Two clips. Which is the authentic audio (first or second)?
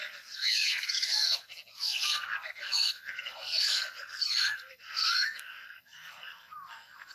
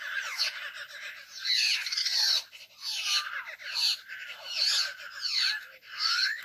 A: second